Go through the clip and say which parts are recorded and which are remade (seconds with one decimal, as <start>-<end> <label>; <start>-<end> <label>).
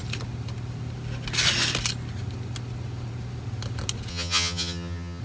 0.0-4.1 recorded; 4.1-5.2 remade